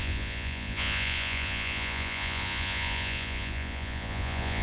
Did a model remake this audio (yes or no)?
yes